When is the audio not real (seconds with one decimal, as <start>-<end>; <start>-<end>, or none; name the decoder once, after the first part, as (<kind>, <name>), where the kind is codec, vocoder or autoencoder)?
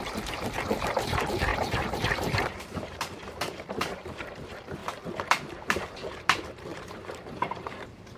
0.0-4.8 (vocoder, BigVGAN v2); 5.5-8.2